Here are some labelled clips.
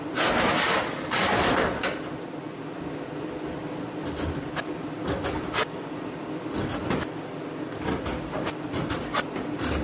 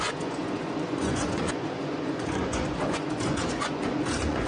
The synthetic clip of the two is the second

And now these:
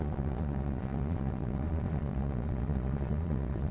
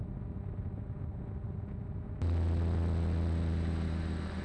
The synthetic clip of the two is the first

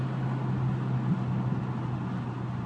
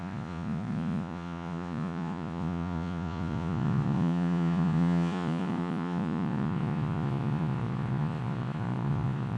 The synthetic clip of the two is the second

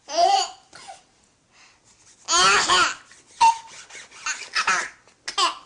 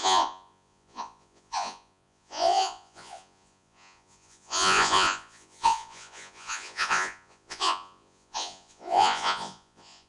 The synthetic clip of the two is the second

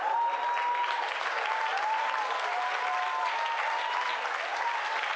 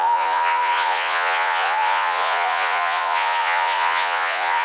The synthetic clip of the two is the second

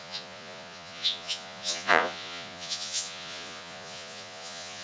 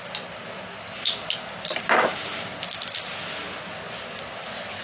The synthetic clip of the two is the first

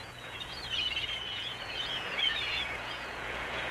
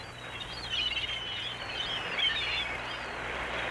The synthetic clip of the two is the first